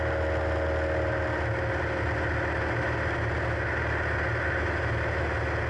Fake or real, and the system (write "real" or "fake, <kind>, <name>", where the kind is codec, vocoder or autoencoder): real